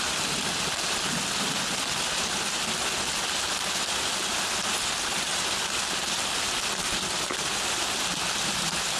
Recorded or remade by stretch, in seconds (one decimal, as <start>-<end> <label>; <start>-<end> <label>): 0.0-9.0 recorded